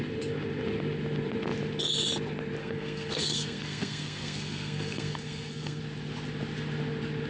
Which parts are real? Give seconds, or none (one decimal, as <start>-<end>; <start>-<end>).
0.0-2.6; 5.8-7.3